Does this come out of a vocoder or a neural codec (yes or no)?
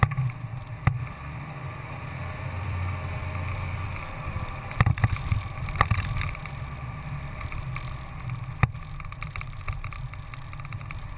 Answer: yes